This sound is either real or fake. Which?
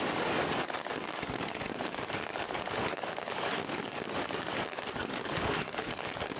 fake